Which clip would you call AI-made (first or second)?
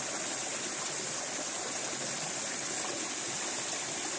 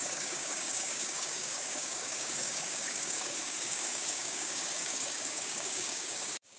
second